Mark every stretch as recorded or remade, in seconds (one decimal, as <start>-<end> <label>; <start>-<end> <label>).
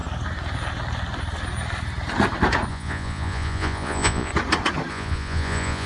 0.0-2.7 recorded; 2.7-4.3 remade; 4.3-4.9 recorded; 4.9-5.9 remade